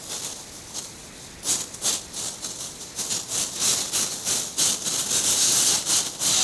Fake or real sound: real